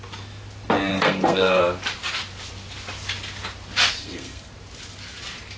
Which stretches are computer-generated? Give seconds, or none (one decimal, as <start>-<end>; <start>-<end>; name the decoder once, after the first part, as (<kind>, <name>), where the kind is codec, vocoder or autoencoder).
0.9-1.6 (codec, SNAC); 4.0-4.5